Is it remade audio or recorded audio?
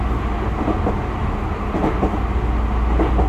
recorded